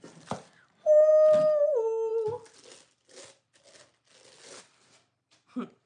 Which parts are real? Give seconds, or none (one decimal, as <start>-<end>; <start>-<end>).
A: 1.1-4.6